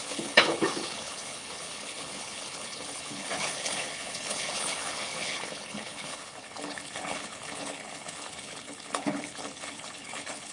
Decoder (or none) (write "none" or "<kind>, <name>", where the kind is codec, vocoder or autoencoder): codec, HILCodec